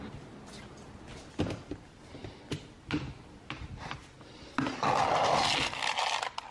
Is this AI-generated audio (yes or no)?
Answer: no